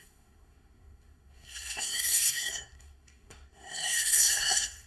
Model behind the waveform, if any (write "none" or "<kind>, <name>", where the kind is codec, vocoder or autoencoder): codec, SNAC